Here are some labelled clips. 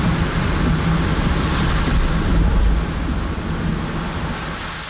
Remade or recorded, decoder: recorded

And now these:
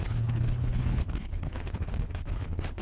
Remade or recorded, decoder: remade, codec, HILCodec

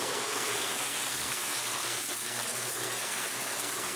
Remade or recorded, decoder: remade, codec, SNAC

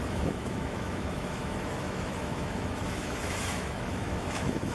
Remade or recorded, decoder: remade, autoencoder, DAC-VAE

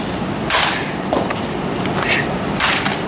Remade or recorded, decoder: recorded